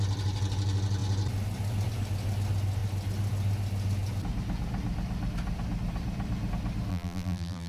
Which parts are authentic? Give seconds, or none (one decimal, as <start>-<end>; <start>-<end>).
0.0-6.9